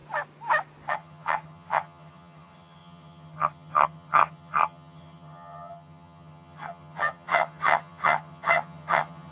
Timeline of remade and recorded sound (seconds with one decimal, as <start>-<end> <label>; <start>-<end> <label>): 0.0-0.9 recorded; 0.9-9.3 remade